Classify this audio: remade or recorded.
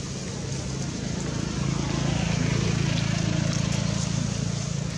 recorded